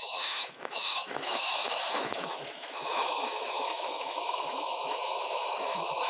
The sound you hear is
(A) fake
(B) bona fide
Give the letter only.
A